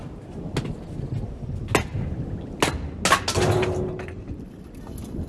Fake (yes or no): no